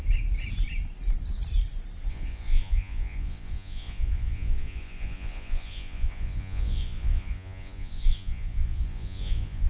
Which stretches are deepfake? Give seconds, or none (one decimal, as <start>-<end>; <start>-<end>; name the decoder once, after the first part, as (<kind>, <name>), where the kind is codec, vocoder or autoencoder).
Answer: 2.1-9.7 (vocoder, Vocos)

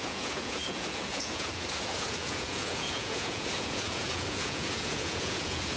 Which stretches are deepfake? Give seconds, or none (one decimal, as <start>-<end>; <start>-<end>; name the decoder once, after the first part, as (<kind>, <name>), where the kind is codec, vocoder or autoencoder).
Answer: 0.0-5.8 (vocoder, Vocos)